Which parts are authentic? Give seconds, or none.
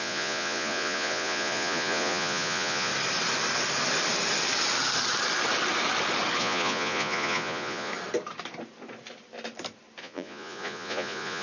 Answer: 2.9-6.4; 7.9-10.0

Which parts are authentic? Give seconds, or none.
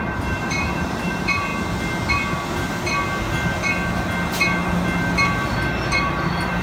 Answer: 1.5-5.5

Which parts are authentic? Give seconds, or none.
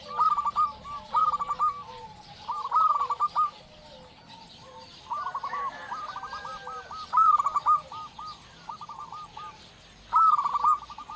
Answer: 0.0-5.3; 7.4-11.2